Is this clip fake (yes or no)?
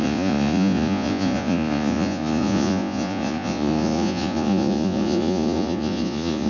yes